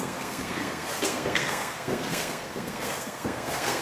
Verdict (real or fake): fake